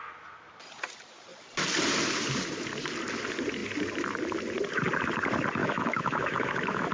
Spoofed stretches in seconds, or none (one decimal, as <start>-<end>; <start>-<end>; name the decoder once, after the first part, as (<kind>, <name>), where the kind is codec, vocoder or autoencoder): 5.6-6.9 (autoencoder, DAC-VAE)